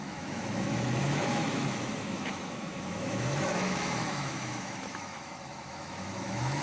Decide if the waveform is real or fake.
fake